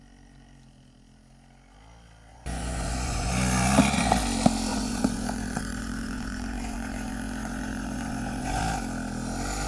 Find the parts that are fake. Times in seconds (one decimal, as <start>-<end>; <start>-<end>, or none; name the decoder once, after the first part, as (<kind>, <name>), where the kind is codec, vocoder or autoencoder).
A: 2.3-3.3 (vocoder, Vocos); 4.7-8.6